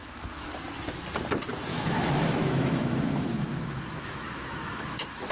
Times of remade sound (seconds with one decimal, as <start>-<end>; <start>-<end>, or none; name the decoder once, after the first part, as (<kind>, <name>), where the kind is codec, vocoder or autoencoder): 0.0-0.5 (autoencoder, DAC-VAE); 1.7-5.3